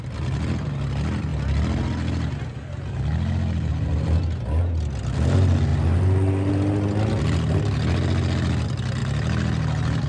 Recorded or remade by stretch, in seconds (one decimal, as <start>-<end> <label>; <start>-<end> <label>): 0.0-10.1 recorded